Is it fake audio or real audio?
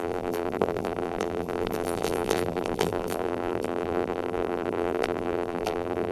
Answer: fake